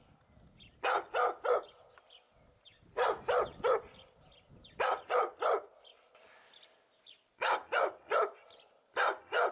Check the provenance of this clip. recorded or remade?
recorded